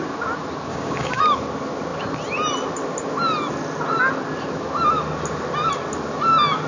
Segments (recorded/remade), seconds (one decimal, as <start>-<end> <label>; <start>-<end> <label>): 0.0-0.7 recorded; 0.7-1.2 remade; 1.2-6.7 recorded